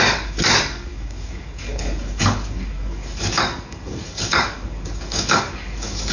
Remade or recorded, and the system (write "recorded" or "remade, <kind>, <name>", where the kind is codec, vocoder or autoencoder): remade, codec, DAC